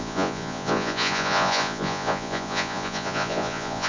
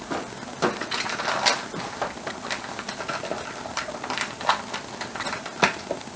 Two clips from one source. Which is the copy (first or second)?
first